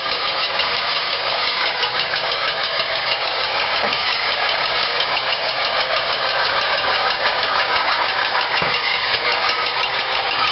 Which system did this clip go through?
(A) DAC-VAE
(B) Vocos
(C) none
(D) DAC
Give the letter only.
D